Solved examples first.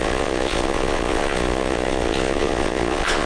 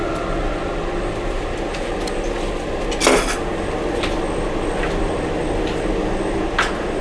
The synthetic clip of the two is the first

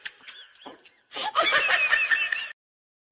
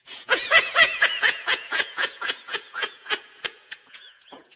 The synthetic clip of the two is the second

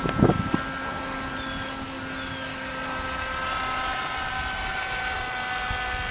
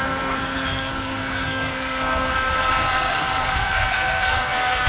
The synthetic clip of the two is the second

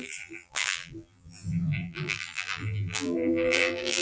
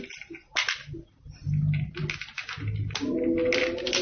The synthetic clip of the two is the first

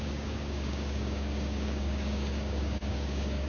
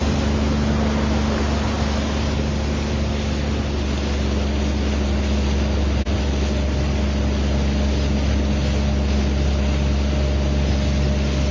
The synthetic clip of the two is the first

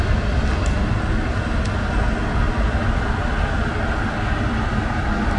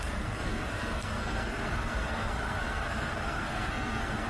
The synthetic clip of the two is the second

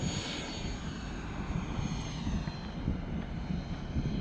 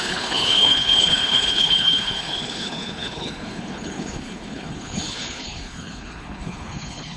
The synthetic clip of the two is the second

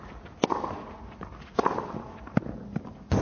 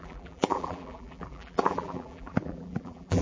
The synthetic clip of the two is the second